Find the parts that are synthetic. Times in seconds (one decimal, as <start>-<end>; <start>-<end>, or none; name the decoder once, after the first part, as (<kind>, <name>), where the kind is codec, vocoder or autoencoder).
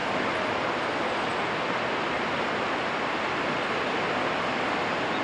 none